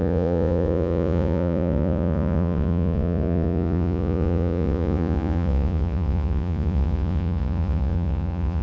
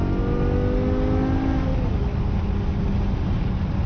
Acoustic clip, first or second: second